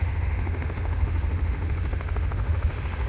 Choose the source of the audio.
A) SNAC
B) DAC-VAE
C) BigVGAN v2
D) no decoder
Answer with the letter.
B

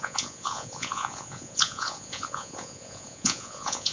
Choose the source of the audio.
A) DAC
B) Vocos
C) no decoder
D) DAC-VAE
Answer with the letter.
B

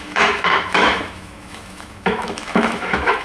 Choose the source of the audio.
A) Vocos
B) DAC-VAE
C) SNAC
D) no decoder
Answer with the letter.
B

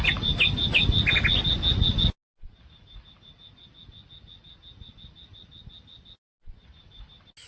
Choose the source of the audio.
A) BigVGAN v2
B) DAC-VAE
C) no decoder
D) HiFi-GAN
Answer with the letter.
C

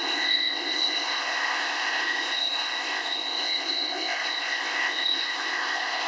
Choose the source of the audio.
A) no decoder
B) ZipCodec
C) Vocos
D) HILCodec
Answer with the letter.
B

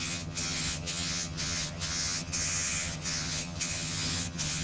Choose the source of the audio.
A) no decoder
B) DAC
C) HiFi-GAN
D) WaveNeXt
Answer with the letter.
C